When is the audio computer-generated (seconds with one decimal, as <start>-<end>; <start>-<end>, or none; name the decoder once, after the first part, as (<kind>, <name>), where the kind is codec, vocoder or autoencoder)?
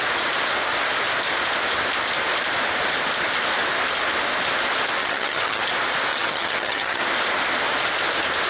5.0-5.6 (vocoder, HiFi-GAN); 6.1-7.0